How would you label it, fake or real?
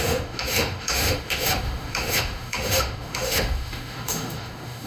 fake